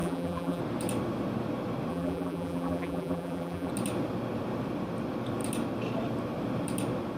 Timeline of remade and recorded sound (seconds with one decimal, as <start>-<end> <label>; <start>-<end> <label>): 0.0-0.6 remade; 0.6-1.9 recorded; 1.9-3.7 remade; 3.7-7.2 recorded